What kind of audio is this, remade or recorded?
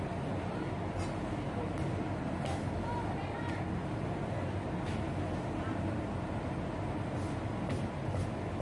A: recorded